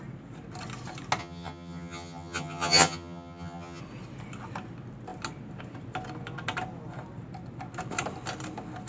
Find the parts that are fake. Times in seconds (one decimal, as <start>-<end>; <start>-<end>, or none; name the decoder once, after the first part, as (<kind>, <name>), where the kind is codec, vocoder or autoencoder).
1.2-3.8 (vocoder, HiFi-GAN)